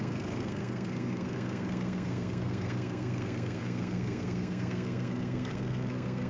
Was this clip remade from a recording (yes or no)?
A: yes